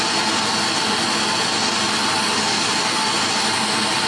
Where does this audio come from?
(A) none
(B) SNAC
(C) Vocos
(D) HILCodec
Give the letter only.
A